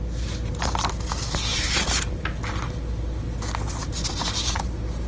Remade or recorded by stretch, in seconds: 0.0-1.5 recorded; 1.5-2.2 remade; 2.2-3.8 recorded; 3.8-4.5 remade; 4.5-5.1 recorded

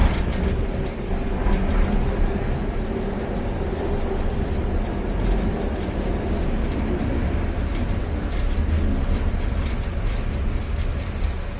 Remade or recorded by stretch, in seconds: 0.0-11.6 recorded

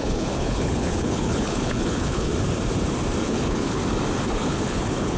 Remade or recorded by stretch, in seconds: 0.0-2.3 remade; 2.3-3.2 recorded; 3.2-3.8 remade; 3.8-4.3 recorded; 4.3-5.2 remade

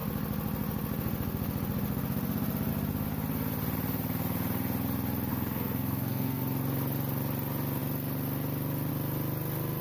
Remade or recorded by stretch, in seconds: 0.0-5.3 recorded; 5.3-6.4 remade; 6.4-9.8 recorded

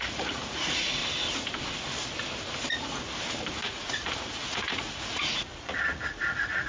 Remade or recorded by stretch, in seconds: 0.0-1.0 remade; 1.0-3.5 recorded; 3.5-6.7 remade